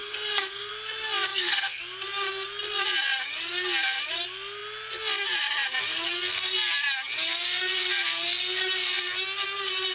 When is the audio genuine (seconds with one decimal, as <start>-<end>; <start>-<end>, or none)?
0.7-1.3; 1.8-9.9